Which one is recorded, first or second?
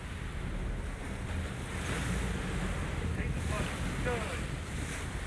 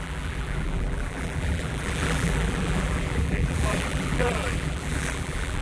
first